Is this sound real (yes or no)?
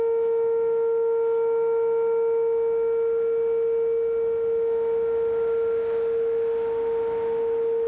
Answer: yes